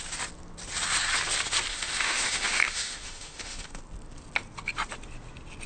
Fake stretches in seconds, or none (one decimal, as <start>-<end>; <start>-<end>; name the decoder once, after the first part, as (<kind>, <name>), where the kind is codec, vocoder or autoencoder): 1.7-3.8 (autoencoder, DAC-VAE)